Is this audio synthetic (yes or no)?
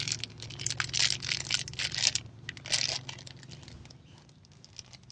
no